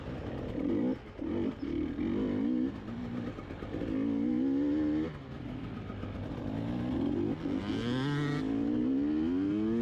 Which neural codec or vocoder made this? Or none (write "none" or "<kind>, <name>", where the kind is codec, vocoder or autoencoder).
none